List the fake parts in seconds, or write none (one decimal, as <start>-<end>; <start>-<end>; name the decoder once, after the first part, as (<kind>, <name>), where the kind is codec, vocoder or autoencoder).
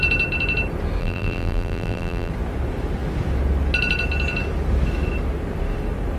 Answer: 1.0-2.3 (vocoder, BigVGAN v2)